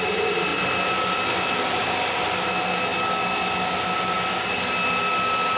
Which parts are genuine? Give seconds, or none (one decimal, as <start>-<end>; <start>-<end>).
0.0-5.6